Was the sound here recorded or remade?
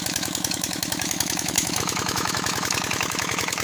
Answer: remade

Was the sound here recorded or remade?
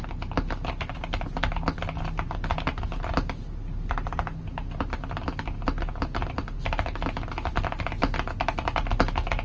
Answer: recorded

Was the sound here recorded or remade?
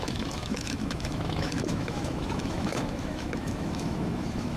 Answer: remade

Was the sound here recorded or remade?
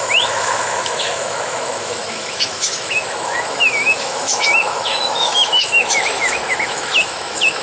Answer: remade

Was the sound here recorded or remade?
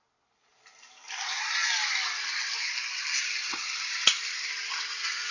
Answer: recorded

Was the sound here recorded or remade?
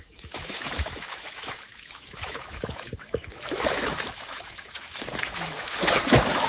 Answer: remade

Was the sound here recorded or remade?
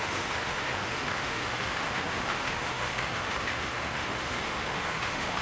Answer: remade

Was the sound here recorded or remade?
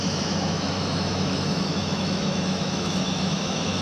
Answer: remade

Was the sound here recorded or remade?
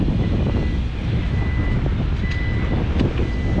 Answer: recorded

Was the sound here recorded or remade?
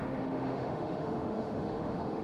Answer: remade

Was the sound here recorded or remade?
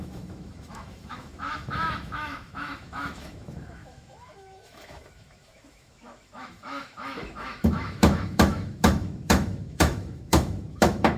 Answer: remade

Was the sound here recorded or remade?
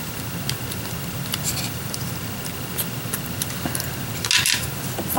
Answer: recorded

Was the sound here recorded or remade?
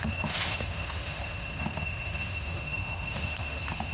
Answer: remade